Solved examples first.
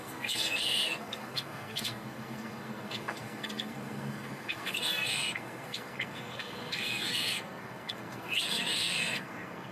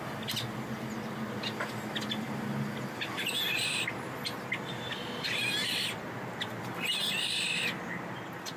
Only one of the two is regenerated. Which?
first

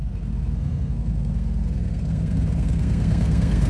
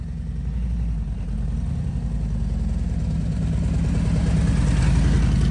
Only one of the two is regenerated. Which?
first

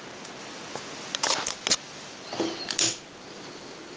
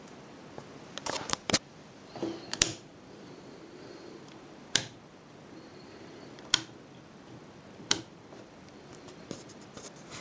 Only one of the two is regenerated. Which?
second